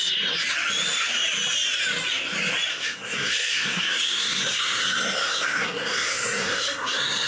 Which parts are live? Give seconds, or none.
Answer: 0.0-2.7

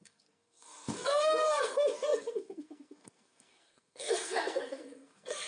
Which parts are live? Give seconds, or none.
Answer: none

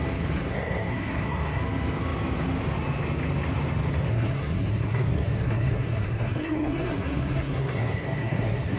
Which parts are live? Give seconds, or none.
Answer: 0.0-0.4; 1.6-4.1